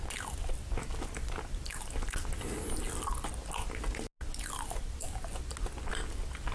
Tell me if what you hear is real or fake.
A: real